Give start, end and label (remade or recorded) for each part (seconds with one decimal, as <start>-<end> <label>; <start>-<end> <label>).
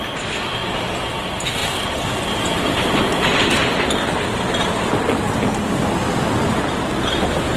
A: 0.0-7.6 recorded